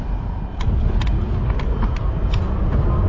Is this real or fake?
real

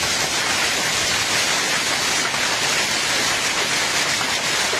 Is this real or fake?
real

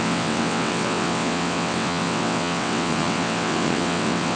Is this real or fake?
fake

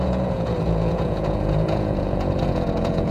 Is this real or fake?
fake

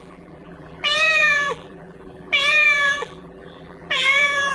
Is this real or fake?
fake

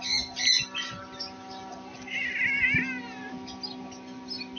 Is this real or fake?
real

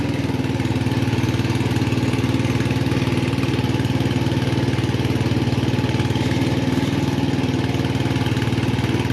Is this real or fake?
real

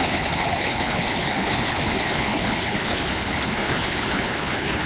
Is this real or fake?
fake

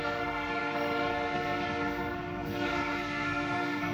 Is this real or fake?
fake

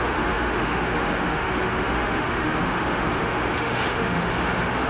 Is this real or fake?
fake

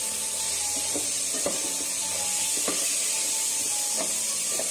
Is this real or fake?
real